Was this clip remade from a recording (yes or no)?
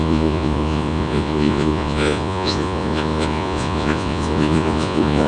yes